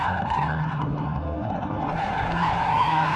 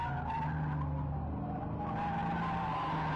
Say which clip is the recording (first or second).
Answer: second